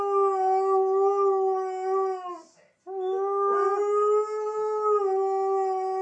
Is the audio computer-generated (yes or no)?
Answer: no